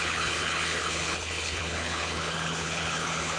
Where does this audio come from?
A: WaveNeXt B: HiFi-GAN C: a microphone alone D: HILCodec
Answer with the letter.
D